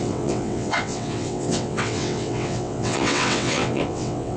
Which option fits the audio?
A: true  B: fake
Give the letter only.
B